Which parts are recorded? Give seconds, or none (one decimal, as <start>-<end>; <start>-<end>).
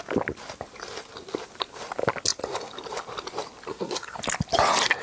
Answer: 0.0-3.7; 4.2-5.0